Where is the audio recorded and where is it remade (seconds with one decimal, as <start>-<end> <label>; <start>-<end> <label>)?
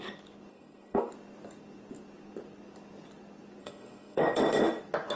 0.0-0.5 recorded; 0.5-1.1 remade; 1.1-3.6 recorded; 3.6-4.4 remade; 4.4-5.2 recorded